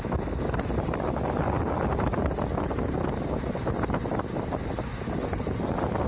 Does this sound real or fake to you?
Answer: real